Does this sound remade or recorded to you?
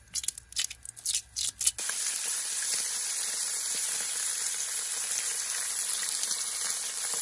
recorded